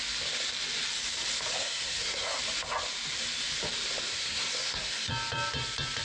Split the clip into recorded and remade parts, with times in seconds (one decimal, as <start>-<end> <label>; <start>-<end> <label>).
0.0-1.6 recorded; 1.6-2.4 remade; 2.4-4.1 recorded; 4.1-5.1 remade; 5.1-6.0 recorded